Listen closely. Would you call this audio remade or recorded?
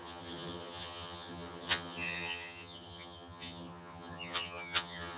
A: remade